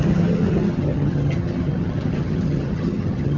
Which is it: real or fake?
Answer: fake